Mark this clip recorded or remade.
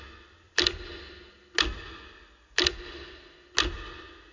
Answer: recorded